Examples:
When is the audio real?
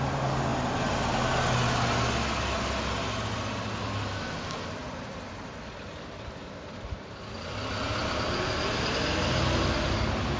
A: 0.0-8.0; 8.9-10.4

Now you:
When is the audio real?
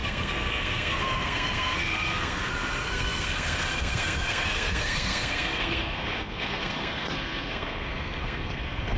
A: none